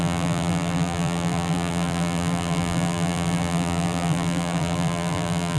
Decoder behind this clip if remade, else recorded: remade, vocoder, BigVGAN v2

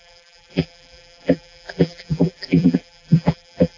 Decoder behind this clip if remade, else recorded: remade, vocoder, BigVGAN v2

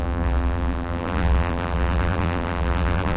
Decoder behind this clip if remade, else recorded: remade, vocoder, BigVGAN v2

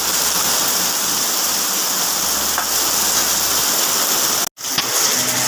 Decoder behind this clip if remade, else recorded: recorded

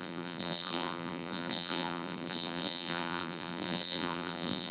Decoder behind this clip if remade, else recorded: remade, vocoder, BigVGAN v2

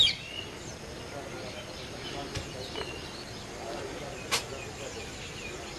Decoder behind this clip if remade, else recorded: recorded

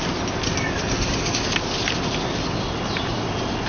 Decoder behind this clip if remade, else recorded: recorded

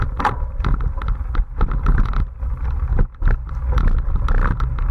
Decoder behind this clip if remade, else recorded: remade, vocoder, BigVGAN v2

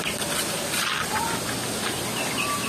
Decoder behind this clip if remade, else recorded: recorded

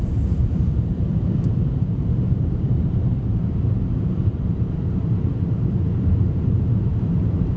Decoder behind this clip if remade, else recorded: remade, vocoder, BigVGAN v2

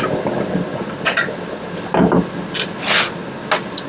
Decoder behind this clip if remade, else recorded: recorded